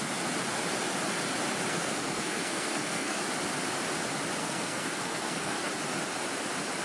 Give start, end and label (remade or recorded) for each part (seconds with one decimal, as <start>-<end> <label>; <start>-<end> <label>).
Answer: 0.0-1.7 recorded; 1.7-3.2 remade; 3.2-4.4 recorded; 4.4-5.7 remade; 5.7-6.8 recorded